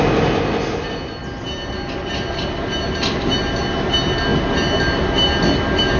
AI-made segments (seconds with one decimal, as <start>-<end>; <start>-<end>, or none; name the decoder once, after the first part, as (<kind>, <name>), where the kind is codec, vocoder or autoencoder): none